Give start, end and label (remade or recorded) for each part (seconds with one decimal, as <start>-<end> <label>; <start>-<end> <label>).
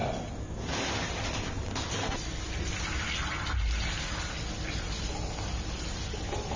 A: 0.0-6.6 recorded